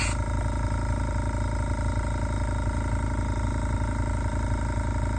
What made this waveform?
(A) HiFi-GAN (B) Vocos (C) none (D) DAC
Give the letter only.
C